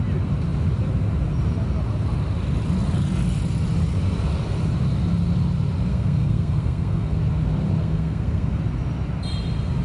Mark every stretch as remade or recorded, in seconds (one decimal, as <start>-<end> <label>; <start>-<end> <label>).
0.0-5.9 recorded; 5.9-7.2 remade; 7.2-7.8 recorded; 7.8-8.6 remade; 8.6-9.8 recorded